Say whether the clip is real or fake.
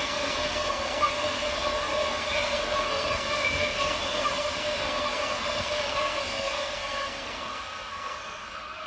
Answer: fake